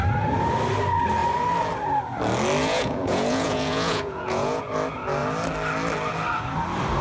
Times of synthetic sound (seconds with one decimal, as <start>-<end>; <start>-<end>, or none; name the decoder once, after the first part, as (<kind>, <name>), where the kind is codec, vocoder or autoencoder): 2.6-4.6 (vocoder, Vocos)